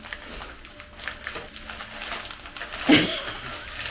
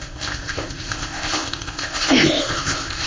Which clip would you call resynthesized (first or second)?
second